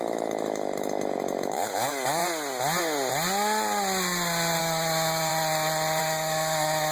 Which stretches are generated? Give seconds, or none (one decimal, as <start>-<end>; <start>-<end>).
0.0-2.2; 4.6-5.3; 6.0-6.9